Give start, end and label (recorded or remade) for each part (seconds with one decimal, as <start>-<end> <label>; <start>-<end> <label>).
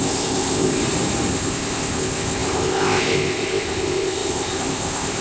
0.0-0.8 remade; 0.8-1.3 recorded; 1.3-5.2 remade